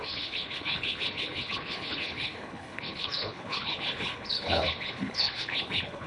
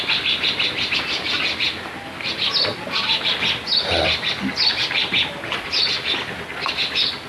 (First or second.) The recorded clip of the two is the second